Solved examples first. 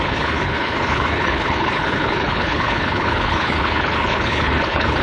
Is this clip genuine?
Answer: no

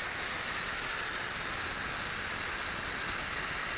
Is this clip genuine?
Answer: yes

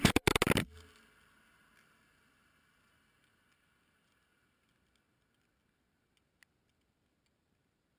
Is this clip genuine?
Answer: yes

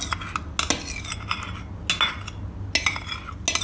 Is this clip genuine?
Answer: yes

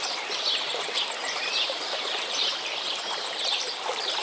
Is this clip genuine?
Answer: no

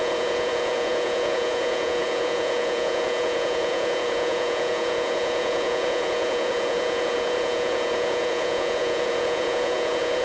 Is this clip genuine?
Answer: no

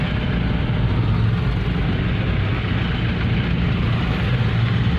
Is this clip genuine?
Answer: yes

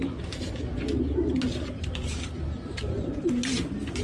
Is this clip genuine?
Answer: yes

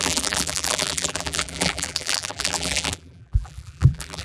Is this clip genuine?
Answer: no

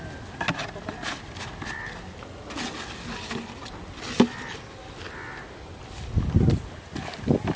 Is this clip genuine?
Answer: yes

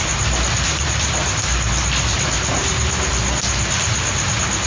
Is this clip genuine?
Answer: yes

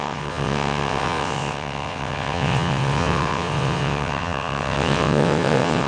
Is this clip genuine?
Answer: no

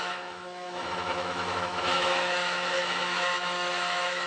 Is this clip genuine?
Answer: no